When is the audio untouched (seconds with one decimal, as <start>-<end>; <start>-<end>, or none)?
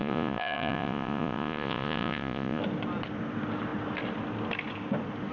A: 2.6-5.3